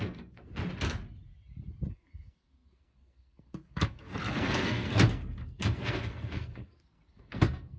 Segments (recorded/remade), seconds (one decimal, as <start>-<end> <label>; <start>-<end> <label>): 0.0-0.6 remade; 0.6-1.9 recorded; 1.9-7.8 remade